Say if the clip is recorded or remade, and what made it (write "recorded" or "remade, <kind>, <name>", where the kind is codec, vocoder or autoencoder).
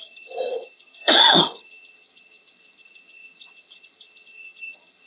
remade, vocoder, HiFi-GAN